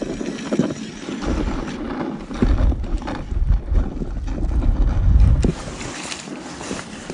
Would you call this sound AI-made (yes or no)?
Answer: no